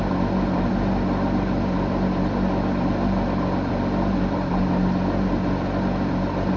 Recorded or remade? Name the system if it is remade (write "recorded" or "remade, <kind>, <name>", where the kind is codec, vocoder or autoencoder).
recorded